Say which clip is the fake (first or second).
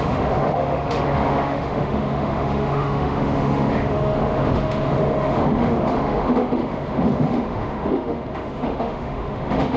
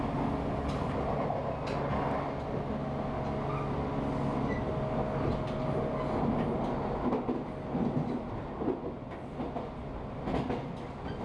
first